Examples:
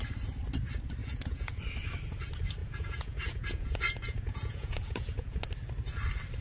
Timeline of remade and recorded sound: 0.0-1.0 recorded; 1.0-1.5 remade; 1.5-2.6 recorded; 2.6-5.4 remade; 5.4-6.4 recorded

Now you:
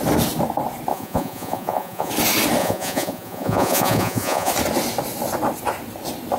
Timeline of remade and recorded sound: 0.0-0.9 recorded; 0.9-2.1 remade; 2.1-2.6 recorded; 2.6-4.5 remade; 4.5-6.4 recorded